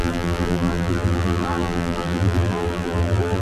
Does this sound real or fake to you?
fake